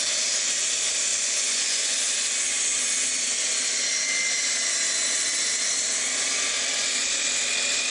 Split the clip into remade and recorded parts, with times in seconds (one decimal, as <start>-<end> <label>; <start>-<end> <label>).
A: 0.0-1.1 recorded; 1.1-2.1 remade; 2.1-7.9 recorded